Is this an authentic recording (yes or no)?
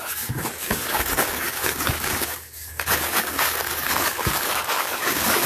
no